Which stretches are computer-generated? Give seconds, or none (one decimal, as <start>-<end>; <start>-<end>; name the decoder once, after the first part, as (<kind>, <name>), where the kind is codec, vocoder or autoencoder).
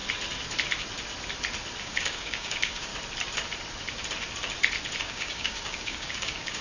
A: 1.8-2.9 (codec, DAC); 5.0-6.6